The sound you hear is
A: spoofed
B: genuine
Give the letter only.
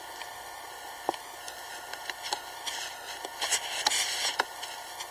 B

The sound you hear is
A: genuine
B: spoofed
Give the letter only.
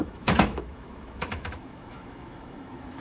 B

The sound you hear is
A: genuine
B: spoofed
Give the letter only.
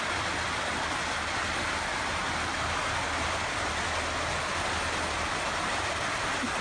A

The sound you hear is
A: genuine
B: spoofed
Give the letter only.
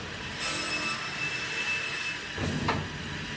A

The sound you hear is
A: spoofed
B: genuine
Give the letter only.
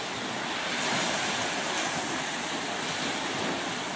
B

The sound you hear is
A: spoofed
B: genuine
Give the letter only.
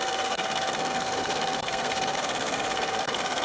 A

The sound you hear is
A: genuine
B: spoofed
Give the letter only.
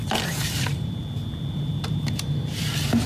B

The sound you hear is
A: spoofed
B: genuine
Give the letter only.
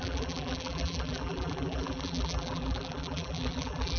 A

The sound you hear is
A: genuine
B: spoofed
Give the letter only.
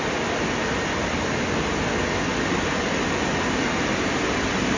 A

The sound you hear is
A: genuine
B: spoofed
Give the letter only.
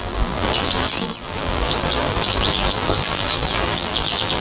B